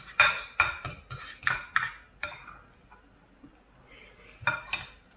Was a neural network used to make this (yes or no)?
no